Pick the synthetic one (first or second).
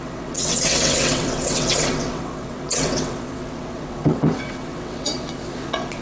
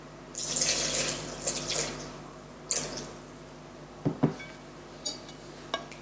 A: first